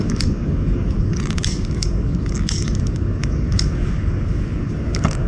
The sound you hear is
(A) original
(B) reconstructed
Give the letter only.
B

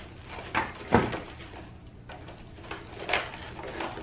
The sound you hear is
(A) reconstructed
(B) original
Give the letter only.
B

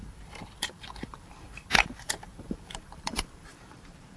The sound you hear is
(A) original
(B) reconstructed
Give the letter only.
B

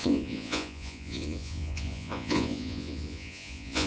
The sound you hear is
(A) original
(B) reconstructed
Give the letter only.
B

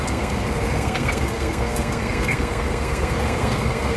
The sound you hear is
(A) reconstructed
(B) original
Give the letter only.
A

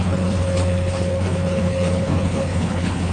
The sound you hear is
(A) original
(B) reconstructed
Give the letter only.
B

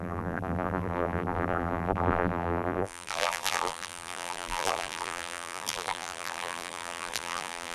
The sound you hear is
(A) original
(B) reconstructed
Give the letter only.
B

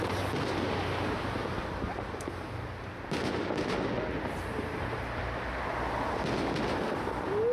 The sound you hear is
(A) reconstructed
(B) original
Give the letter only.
B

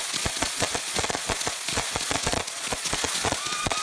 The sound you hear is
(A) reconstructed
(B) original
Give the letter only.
A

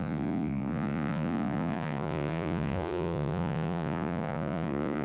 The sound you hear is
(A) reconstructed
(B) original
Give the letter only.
A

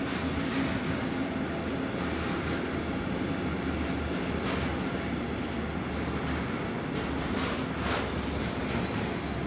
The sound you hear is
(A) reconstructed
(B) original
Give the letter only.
B